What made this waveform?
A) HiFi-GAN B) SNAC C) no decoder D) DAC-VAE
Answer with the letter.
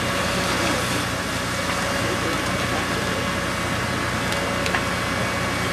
C